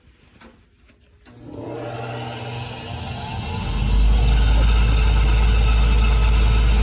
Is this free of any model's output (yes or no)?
yes